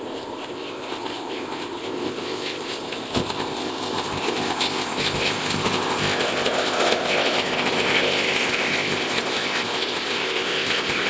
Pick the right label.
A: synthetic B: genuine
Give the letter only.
A